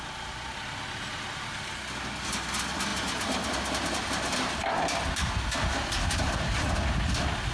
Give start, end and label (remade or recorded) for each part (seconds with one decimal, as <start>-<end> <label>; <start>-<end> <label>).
0.0-7.5 recorded